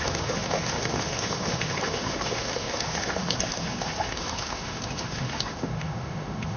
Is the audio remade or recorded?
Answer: remade